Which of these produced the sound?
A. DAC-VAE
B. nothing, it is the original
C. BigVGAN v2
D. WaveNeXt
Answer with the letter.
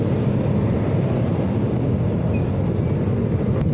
B